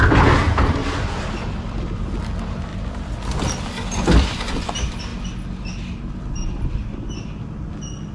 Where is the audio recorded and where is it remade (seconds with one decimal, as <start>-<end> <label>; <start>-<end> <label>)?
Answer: 0.0-0.8 recorded; 0.8-2.2 remade; 2.2-2.7 recorded; 2.7-3.2 remade; 3.2-8.1 recorded